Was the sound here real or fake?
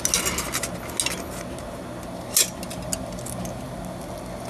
real